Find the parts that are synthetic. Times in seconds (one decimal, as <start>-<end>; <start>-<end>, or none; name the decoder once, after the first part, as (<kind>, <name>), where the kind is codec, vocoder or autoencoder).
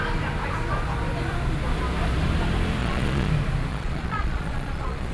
2.8-3.3 (vocoder, Vocos); 3.7-5.1